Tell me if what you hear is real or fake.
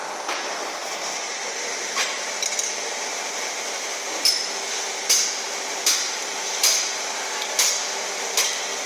real